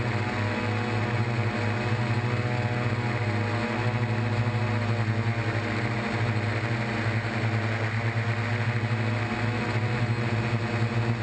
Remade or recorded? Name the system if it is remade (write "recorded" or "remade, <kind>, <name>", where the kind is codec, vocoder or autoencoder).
recorded